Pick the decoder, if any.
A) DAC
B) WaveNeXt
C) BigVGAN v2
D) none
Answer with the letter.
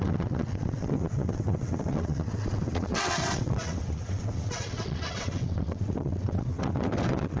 B